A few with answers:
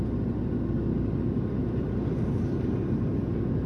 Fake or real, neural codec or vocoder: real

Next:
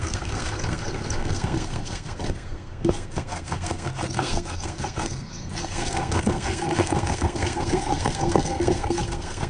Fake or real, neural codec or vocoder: fake, codec, SNAC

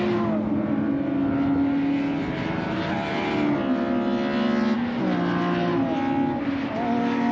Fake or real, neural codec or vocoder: real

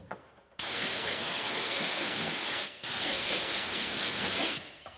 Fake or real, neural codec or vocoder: fake, codec, SNAC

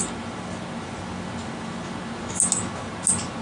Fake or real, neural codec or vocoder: real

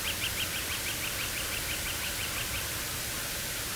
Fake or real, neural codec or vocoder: real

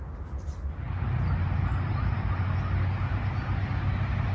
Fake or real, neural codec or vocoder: real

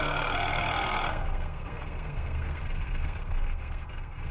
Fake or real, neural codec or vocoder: fake, codec, SNAC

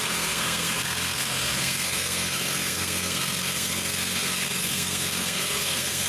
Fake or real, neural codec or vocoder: fake, codec, SNAC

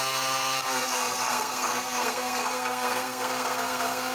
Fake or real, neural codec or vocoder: fake, codec, SNAC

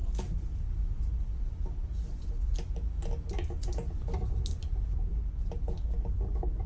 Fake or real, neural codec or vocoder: real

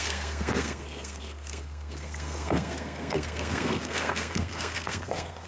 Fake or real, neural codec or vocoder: fake, codec, SNAC